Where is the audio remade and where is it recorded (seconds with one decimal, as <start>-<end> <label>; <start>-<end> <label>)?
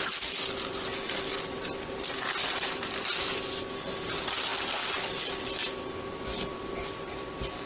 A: 0.0-7.7 recorded